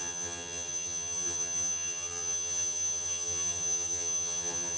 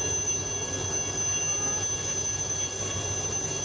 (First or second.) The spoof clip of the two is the first